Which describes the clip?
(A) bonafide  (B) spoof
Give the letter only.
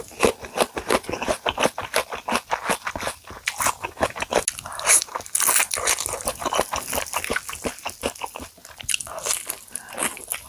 A